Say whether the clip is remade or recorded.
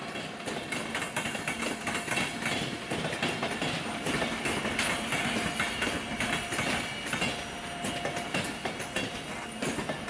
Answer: recorded